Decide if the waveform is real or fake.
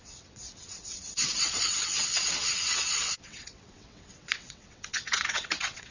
fake